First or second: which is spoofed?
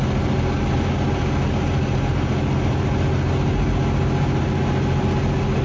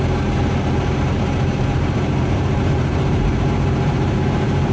second